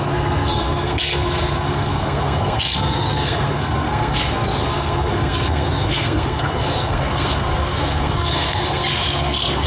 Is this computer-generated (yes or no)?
yes